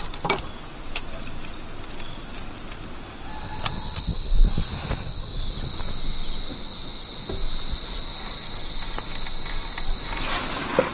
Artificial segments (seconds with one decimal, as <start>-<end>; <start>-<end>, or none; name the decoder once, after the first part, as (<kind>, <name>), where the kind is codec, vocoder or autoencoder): 7.4-8.0 (vocoder, BigVGAN v2)